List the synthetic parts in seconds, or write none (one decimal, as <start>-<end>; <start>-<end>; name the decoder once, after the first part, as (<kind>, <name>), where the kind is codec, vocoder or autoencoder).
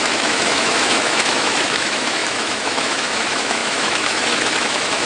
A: 0.0-5.1 (autoencoder, DAC-VAE)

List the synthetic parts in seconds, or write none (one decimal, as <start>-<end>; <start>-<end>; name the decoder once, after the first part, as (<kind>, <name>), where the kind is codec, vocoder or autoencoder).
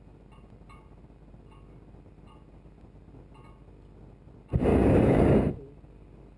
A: 4.7-5.5 (codec, DAC)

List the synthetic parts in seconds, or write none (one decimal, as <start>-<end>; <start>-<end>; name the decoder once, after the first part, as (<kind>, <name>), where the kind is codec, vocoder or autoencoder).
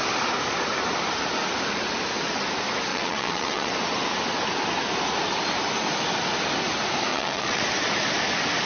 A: 2.9-3.7 (vocoder, WaveNeXt); 7.1-7.6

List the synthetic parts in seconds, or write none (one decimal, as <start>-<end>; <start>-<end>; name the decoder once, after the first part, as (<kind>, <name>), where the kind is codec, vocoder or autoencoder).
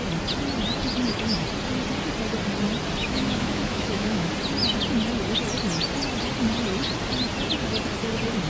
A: 3.0-4.3 (autoencoder, DAC-VAE)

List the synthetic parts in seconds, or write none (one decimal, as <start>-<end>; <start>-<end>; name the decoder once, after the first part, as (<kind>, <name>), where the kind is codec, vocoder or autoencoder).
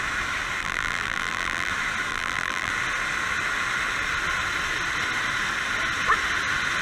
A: 0.6-1.7 (vocoder, BigVGAN v2); 2.1-2.7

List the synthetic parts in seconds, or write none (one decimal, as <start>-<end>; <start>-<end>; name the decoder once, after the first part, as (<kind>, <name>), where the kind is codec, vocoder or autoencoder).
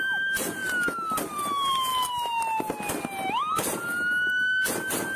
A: 0.0-0.6 (vocoder, BigVGAN v2); 1.2-1.9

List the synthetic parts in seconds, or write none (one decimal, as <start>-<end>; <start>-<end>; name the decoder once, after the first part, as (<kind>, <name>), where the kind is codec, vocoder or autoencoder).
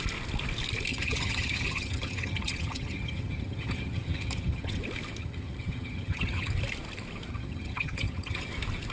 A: 0.9-4.8 (vocoder, HiFi-GAN); 5.2-6.5; 7.3-8.4